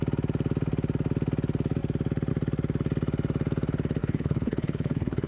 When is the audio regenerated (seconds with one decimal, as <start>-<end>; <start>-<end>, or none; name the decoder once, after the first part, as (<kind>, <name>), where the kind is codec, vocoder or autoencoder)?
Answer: 4.0-5.3 (codec, HILCodec)